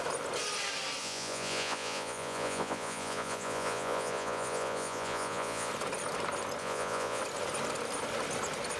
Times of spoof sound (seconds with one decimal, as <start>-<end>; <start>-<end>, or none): 1.0-5.7; 6.6-7.2